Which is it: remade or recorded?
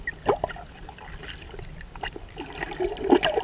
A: recorded